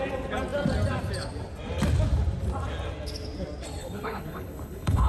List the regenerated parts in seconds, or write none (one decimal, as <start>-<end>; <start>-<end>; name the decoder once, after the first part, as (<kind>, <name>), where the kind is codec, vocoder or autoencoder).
3.8-5.1 (codec, HILCodec)